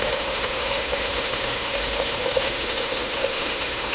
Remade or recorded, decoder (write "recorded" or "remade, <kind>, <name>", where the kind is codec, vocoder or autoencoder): remade, autoencoder, DAC-VAE